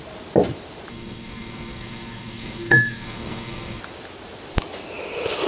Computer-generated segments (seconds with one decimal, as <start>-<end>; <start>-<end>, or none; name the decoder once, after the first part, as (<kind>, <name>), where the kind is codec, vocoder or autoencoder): 0.9-3.8 (codec, SNAC)